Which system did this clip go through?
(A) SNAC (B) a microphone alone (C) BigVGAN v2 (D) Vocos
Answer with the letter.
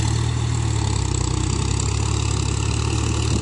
B